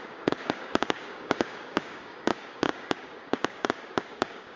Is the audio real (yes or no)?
no